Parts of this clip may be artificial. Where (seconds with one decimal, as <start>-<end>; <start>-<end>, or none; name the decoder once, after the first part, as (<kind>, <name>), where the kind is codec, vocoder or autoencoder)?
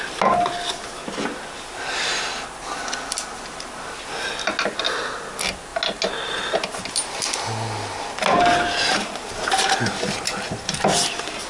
none